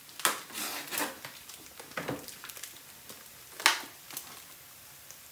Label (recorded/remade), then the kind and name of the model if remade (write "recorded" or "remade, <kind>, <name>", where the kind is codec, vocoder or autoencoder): recorded